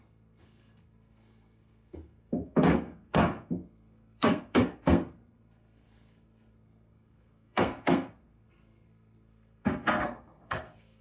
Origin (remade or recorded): remade